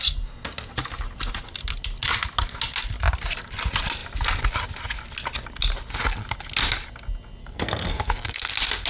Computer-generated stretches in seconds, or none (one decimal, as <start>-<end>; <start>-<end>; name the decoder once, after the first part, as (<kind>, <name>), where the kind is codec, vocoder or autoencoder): 7.4-8.5 (codec, SNAC)

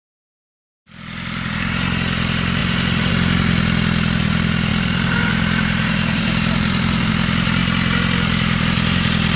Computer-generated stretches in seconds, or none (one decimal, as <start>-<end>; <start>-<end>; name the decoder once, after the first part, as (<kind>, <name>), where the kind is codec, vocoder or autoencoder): 2.6-3.1 (vocoder, BigVGAN v2); 4.7-7.1

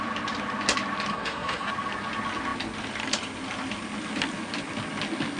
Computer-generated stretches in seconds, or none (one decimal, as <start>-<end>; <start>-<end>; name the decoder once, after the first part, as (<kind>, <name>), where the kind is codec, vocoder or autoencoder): 1.1-1.7 (codec, SNAC)

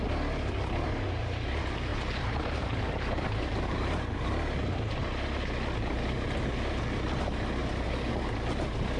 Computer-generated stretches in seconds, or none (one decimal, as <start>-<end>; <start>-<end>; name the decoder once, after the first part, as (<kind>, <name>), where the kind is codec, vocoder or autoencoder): 1.9-4.3 (vocoder, BigVGAN v2); 7.6-8.1